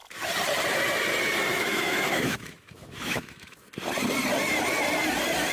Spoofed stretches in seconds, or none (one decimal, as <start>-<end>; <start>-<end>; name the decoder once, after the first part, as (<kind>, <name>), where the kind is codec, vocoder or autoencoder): 1.5-3.7 (autoencoder, DAC-VAE)